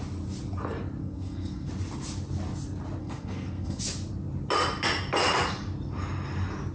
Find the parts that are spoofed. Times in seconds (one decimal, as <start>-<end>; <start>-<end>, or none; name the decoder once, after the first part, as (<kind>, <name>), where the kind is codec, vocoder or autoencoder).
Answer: 1.0-1.7 (codec, SNAC); 3.0-3.8

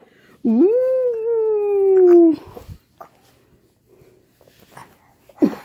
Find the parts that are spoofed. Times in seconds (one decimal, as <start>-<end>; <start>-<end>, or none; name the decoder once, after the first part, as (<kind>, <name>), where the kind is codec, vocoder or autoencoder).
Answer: none

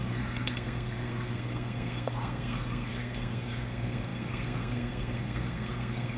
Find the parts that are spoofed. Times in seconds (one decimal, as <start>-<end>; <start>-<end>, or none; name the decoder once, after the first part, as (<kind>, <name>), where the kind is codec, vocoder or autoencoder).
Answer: 0.0-6.2 (codec, SNAC)

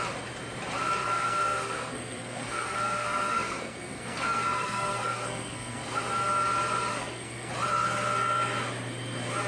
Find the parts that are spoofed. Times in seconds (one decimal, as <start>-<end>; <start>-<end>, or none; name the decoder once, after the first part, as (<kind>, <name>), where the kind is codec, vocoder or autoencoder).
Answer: 1.0-6.0 (codec, SNAC); 6.9-7.5